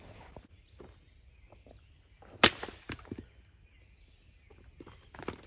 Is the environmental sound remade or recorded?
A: recorded